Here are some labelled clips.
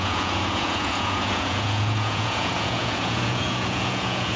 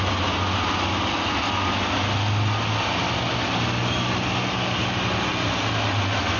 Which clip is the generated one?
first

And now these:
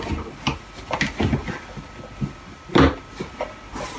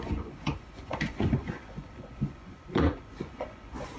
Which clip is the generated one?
second